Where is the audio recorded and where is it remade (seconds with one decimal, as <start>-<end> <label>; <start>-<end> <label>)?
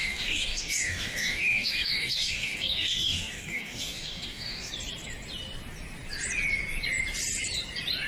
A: 0.0-4.7 remade; 4.7-8.1 recorded